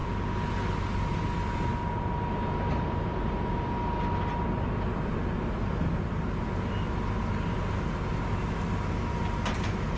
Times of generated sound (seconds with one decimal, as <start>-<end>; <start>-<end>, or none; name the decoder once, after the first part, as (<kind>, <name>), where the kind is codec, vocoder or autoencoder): none